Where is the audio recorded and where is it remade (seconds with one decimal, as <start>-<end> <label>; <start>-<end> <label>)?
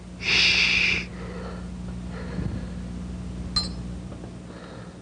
0.0-5.0 recorded